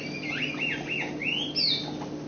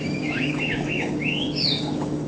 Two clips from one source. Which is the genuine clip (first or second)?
first